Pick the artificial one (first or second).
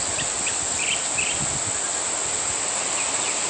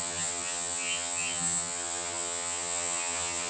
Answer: second